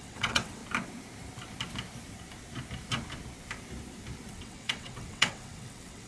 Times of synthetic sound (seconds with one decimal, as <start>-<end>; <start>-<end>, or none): 0.0-0.6; 4.3-6.1